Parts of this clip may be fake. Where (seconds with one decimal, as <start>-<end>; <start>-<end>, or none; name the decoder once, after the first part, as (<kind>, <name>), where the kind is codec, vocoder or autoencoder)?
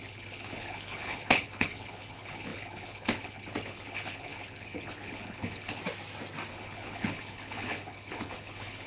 0.0-5.8 (codec, HILCodec); 6.5-8.9